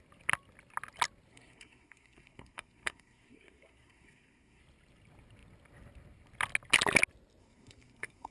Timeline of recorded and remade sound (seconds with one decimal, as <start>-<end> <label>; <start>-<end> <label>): 0.0-1.3 recorded; 1.3-4.6 remade; 4.6-7.4 recorded; 7.4-8.3 remade